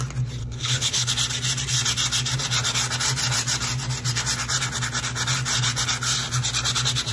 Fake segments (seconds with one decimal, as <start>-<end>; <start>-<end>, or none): 0.4-1.1

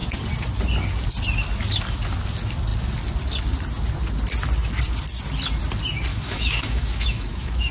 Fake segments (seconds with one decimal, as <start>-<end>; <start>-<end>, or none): 6.1-7.7